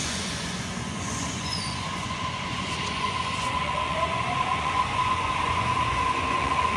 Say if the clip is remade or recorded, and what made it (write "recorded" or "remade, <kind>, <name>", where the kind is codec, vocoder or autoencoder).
remade, vocoder, Vocos